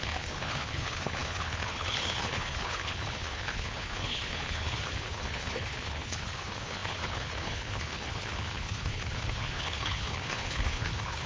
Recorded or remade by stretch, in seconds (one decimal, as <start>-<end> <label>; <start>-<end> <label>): 0.0-11.3 remade